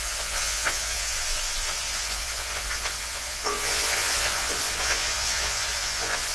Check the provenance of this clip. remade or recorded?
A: remade